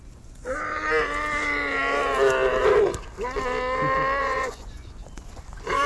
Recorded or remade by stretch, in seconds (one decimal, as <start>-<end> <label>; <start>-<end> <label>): 0.0-0.7 remade; 0.7-4.2 recorded; 4.2-5.9 remade